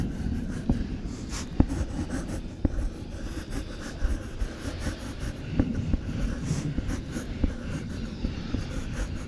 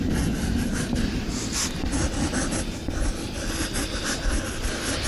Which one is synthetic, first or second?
first